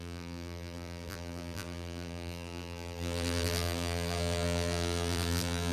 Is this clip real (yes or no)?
no